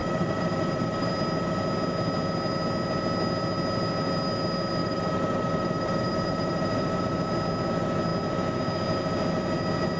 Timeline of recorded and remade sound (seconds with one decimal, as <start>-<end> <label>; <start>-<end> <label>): 0.0-1.1 remade; 1.1-4.8 recorded; 4.8-7.0 remade; 7.0-10.0 recorded